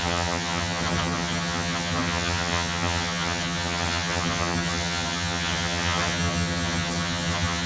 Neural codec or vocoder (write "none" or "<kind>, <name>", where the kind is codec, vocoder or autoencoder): vocoder, HiFi-GAN